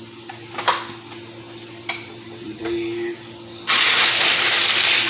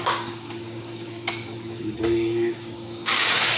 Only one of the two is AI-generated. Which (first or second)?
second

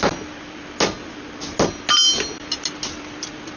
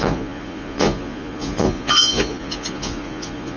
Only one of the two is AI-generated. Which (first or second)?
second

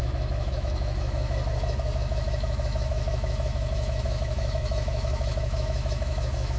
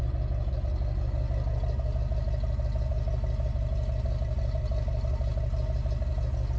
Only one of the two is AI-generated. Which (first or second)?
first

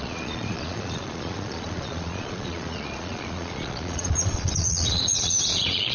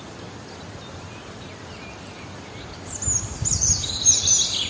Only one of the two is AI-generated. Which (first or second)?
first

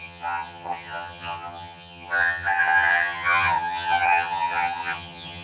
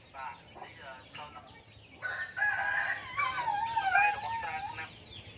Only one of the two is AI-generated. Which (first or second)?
first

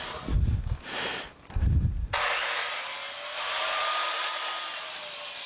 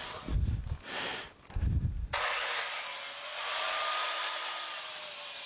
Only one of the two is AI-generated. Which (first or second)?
second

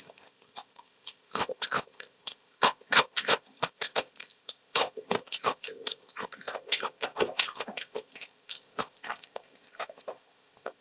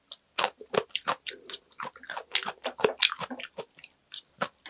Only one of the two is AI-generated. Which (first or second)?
first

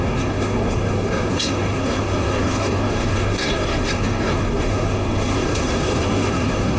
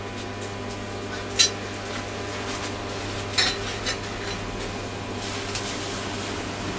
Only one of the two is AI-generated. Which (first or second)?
first